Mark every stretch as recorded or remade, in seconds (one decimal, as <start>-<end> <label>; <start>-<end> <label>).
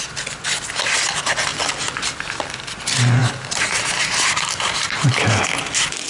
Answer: 0.0-3.2 recorded; 3.2-5.0 remade; 5.0-6.1 recorded